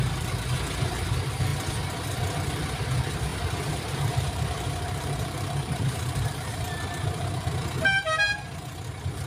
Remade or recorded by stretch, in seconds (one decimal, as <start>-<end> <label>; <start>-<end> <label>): 0.0-3.3 recorded; 3.3-7.5 remade; 7.5-9.3 recorded